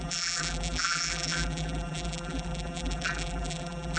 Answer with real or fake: fake